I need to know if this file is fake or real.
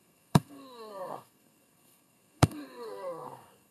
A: fake